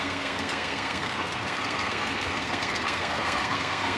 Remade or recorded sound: remade